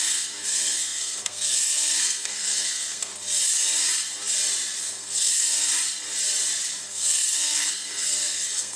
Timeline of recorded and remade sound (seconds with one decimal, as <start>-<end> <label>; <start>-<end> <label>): 0.0-3.1 remade; 3.1-4.8 recorded; 4.8-5.7 remade; 5.7-6.8 recorded; 6.8-8.8 remade